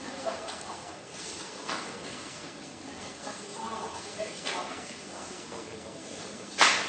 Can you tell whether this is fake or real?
fake